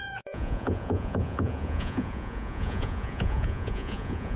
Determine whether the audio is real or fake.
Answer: fake